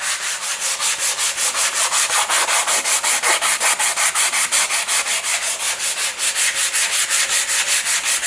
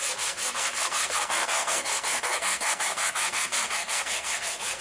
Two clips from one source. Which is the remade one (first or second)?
second